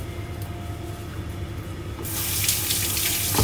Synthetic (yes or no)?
no